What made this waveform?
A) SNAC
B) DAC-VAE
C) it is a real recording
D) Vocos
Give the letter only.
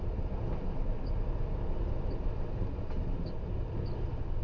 C